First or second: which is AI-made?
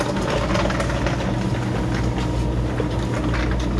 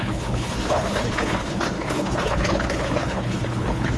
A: second